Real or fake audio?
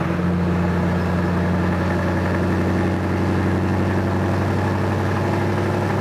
real